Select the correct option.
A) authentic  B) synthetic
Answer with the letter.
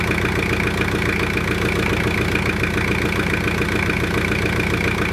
A